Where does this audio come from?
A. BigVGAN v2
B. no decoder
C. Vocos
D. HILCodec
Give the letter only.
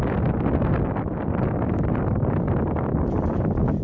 B